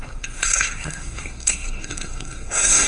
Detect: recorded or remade remade